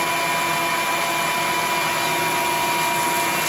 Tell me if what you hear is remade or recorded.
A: recorded